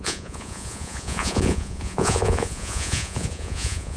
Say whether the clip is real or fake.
fake